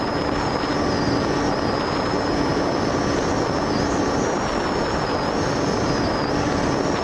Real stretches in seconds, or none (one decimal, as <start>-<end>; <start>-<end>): 0.0-7.0